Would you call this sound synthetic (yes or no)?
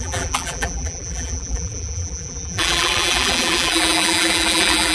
yes